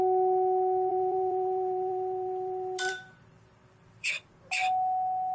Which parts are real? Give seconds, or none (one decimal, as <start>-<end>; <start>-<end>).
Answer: 0.0-0.9; 4.1-5.3